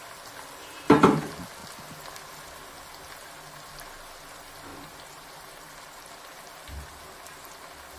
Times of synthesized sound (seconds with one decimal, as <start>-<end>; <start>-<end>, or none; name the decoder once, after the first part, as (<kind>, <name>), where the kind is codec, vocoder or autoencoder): 4.7-6.2 (vocoder, BigVGAN v2)